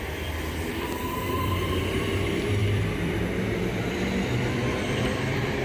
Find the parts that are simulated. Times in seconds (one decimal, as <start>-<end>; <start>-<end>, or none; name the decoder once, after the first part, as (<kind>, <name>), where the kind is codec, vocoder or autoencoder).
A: 0.0-5.6 (vocoder, BigVGAN v2)